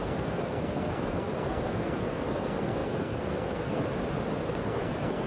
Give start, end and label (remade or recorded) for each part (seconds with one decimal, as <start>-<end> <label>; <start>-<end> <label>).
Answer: 0.0-3.8 remade; 3.8-4.4 recorded; 4.4-5.3 remade